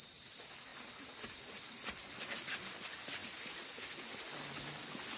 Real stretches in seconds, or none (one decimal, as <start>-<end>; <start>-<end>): 0.0-3.2; 3.8-5.2